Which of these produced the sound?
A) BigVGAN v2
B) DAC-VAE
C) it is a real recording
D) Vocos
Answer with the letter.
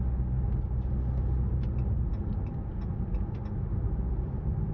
C